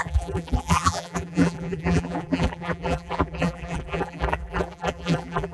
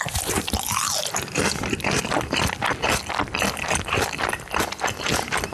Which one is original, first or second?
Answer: second